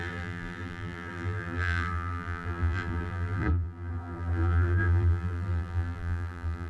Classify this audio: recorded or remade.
remade